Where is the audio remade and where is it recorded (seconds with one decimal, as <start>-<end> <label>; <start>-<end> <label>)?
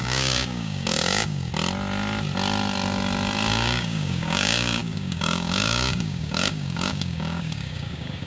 0.0-1.5 remade; 1.5-3.5 recorded; 3.5-8.3 remade